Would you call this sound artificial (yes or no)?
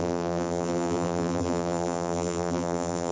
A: yes